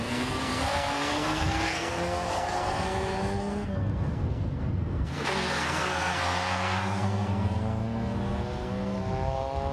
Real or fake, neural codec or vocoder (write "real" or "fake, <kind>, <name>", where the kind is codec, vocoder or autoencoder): fake, codec, SNAC